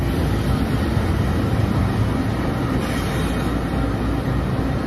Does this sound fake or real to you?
real